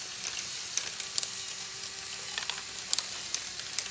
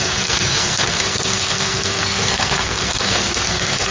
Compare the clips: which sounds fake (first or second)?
second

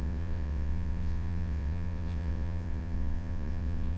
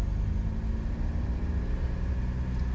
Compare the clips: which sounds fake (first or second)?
first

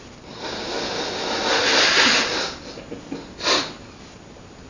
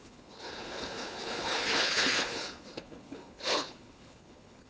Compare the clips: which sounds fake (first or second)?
second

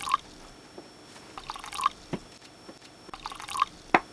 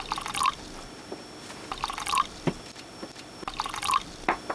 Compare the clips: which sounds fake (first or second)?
second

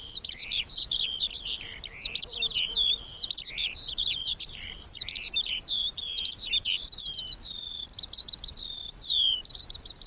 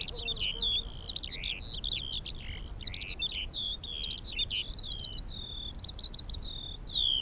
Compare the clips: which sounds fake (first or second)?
first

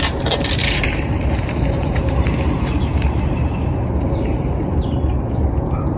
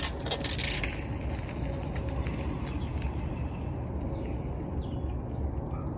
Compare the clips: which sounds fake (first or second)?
first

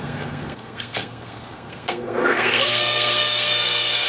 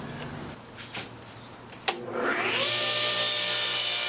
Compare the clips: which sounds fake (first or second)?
first